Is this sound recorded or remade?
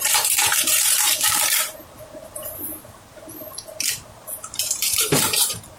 remade